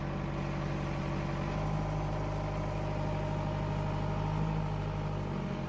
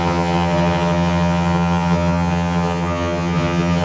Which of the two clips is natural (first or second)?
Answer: first